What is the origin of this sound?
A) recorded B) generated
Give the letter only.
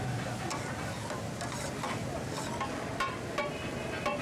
A